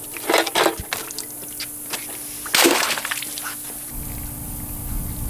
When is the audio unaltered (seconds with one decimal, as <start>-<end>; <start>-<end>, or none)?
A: 0.0-5.3

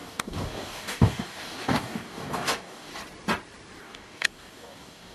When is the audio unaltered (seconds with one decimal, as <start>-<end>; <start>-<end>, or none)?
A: 2.9-3.8

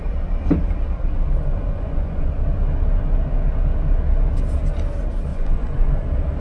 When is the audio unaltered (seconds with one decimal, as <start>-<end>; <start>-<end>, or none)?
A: 0.0-1.7; 2.4-5.3; 5.9-6.4

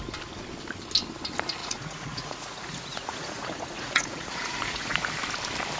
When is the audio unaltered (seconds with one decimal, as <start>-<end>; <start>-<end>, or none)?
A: 0.0-1.6; 5.1-5.8

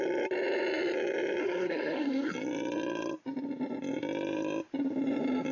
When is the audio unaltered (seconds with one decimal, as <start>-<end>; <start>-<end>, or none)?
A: 0.0-1.4; 2.3-5.5

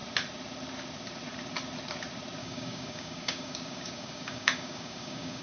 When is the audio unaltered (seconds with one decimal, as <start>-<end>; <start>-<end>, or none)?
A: 0.0-2.4

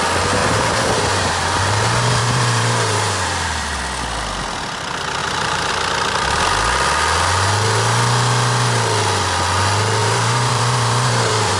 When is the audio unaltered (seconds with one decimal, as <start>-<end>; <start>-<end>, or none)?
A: 0.0-0.4; 1.6-2.2; 3.8-5.2; 5.7-10.0